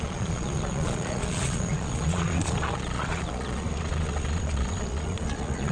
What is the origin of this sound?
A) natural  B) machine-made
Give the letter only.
B